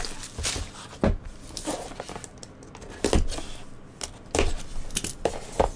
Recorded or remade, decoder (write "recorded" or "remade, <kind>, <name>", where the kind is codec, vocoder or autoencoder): recorded